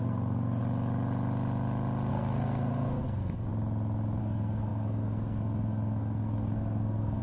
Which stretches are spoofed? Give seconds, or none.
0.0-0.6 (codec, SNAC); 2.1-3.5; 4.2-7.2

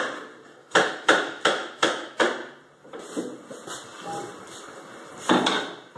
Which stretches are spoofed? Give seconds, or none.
0.6-2.2 (autoencoder, DAC-VAE)

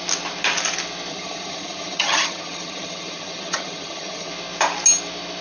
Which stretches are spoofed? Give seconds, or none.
1.1-4.3 (vocoder, HiFi-GAN)

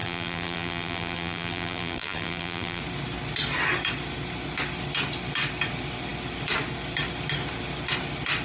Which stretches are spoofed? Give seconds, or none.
0.0-2.8 (vocoder, BigVGAN v2)

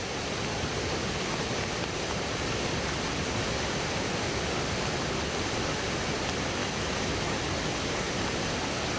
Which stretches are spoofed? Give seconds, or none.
6.6-7.4 (autoencoder, DAC-VAE)